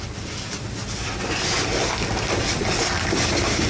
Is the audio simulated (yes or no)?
no